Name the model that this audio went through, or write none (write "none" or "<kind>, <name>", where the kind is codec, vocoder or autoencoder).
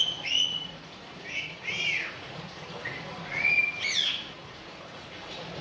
vocoder, Vocos